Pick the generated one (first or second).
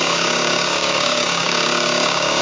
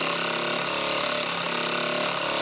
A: first